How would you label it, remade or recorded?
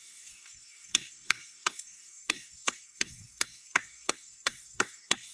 remade